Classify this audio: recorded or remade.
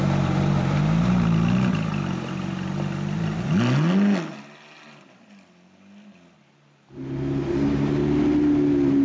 recorded